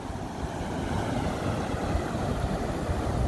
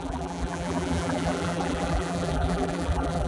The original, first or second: first